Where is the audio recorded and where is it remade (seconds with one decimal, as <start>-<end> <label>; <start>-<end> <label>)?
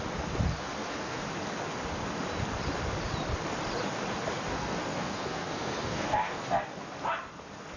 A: 0.0-0.6 recorded; 0.6-1.2 remade; 1.2-4.5 recorded; 4.5-6.6 remade; 6.6-7.8 recorded